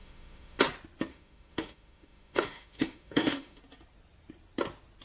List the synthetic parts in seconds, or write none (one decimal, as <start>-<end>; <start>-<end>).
0.0-0.6; 1.1-3.6